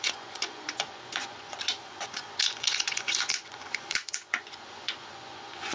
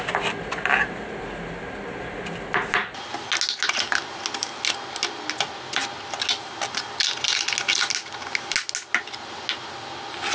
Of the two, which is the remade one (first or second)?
first